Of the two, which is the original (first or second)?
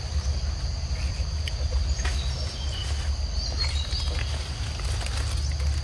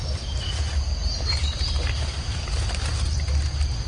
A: first